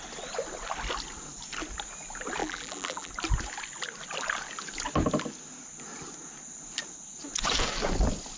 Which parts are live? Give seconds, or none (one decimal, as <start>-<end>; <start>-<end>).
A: 0.0-2.4; 3.1-8.4